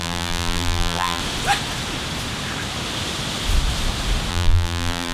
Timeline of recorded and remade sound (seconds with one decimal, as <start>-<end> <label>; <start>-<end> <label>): 0.0-1.2 remade; 1.2-4.3 recorded; 4.3-5.1 remade